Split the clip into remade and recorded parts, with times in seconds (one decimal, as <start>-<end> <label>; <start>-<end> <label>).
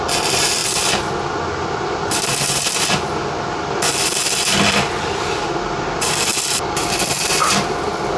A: 0.0-8.2 recorded